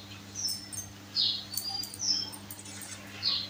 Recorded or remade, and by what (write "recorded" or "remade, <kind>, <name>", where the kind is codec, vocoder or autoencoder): recorded